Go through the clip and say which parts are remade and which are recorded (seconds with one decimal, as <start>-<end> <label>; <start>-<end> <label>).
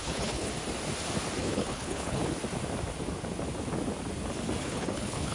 0.0-0.5 remade; 0.5-1.4 recorded; 1.4-2.2 remade; 2.2-4.6 recorded; 4.6-5.3 remade